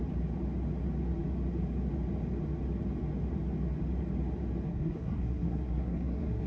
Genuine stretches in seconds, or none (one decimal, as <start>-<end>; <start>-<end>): 0.0-4.7